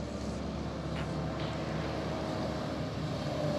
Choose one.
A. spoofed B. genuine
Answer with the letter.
B